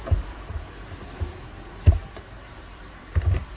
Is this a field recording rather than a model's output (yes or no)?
no